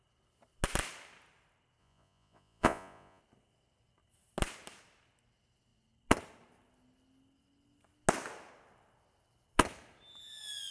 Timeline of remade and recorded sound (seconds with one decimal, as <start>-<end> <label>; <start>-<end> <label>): 0.0-1.8 recorded; 1.8-3.2 remade; 3.2-10.7 recorded